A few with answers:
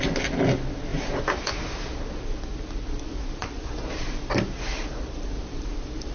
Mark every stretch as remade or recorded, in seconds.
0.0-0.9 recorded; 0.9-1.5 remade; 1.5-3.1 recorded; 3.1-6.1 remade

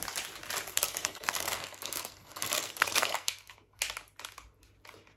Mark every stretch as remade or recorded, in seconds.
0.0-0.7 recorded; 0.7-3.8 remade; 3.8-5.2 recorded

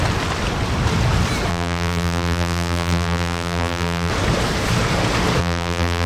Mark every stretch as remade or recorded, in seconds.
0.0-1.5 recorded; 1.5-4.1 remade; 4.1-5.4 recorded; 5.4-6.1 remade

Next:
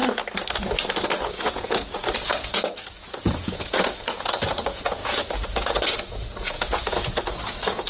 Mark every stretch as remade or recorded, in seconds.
0.0-1.2 recorded; 1.2-7.9 remade

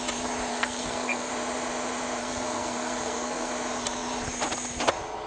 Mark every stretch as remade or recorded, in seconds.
0.0-0.5 recorded; 0.5-1.3 remade; 1.3-2.2 recorded; 2.2-3.5 remade; 3.5-5.3 recorded

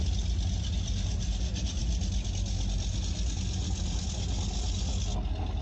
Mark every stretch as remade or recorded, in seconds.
0.0-5.6 recorded